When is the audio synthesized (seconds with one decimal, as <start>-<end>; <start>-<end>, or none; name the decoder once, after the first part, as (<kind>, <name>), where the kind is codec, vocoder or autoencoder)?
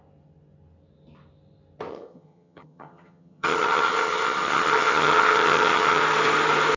1.9-6.0 (vocoder, HiFi-GAN)